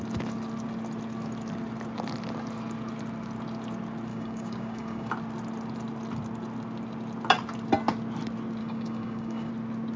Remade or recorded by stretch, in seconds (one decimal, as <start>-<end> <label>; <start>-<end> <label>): 0.0-4.1 recorded; 4.1-5.1 remade; 5.1-8.6 recorded; 8.6-9.5 remade; 9.5-10.0 recorded